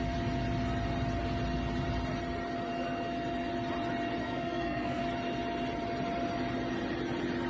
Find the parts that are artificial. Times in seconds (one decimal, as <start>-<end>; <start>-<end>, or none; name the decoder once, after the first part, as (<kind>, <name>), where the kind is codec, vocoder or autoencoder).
4.2-5.0 (codec, SNAC)